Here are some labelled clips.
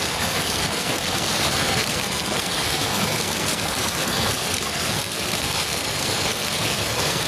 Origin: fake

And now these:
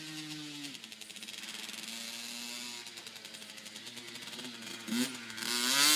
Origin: real